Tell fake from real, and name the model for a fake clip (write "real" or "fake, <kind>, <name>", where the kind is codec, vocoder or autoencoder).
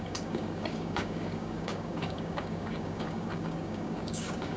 fake, codec, DAC